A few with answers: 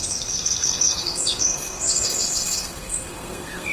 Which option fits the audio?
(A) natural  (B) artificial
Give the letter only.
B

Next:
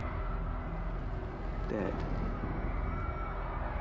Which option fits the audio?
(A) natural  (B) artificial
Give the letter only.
A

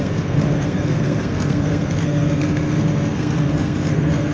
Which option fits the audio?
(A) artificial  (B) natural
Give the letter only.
A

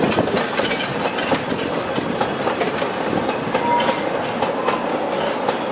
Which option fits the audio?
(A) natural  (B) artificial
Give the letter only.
A